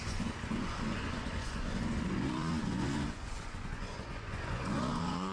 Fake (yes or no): yes